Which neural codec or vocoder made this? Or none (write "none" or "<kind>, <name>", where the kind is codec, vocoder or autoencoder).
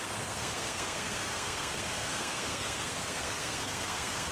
codec, SNAC